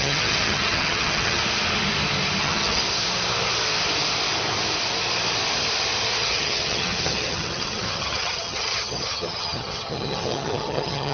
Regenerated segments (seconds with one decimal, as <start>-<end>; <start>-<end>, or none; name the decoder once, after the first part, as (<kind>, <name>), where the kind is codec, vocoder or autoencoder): 0.0-1.4 (vocoder, HiFi-GAN); 2.4-2.8; 6.2-11.1